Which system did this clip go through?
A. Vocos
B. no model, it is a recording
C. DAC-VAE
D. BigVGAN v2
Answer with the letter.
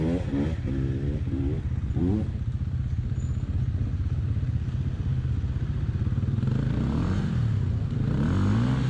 B